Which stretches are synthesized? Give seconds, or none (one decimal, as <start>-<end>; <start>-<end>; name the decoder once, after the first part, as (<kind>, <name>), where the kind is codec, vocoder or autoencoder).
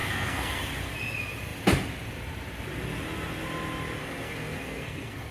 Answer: 0.0-0.6 (codec, SNAC); 4.0-5.3